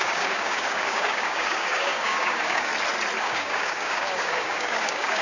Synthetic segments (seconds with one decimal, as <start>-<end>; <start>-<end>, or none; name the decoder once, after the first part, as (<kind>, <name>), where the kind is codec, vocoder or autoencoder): 0.0-2.7 (codec, DAC); 3.2-5.2